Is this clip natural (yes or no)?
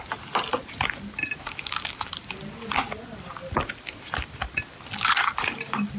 yes